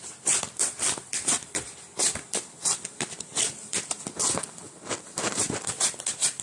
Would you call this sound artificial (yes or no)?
yes